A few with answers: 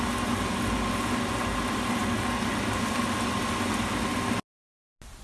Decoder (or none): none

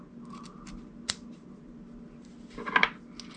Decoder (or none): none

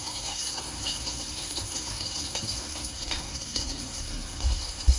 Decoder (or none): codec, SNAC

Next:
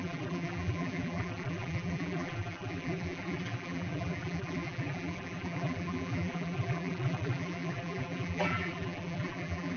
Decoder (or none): vocoder, BigVGAN v2